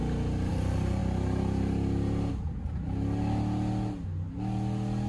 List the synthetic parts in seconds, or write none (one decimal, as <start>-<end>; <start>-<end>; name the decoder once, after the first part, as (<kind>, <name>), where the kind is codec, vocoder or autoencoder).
none